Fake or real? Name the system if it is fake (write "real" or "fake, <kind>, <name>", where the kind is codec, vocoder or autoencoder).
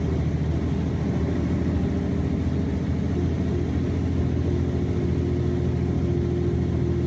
real